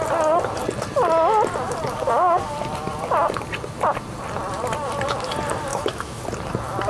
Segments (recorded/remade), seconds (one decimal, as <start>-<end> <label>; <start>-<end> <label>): 0.0-5.7 recorded; 5.7-6.2 remade; 6.2-6.9 recorded